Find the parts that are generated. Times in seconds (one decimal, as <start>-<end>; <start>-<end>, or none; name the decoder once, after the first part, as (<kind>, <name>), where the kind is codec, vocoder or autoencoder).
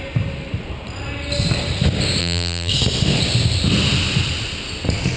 2.2-2.7 (vocoder, BigVGAN v2)